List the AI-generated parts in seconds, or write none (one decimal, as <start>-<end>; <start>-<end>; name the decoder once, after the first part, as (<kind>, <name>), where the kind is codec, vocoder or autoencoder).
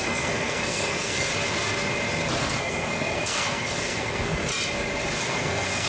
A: 0.0-1.3 (codec, SNAC); 2.4-4.5; 5.2-5.9